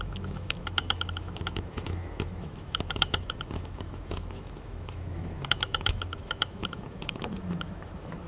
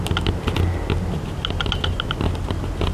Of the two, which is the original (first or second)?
second